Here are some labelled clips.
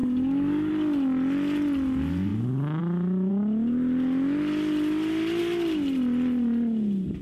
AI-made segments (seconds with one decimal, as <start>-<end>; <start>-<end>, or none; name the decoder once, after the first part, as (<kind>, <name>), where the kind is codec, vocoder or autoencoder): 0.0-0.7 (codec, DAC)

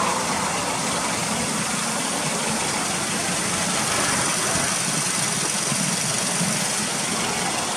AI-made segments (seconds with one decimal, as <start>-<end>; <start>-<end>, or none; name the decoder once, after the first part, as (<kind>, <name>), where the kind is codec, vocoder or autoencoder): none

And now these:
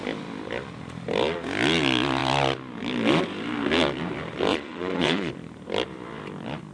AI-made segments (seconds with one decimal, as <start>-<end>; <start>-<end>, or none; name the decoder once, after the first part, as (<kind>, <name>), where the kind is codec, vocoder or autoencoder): 4.5-5.3 (vocoder, Vocos)